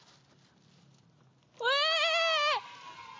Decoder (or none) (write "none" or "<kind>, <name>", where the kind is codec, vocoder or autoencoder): none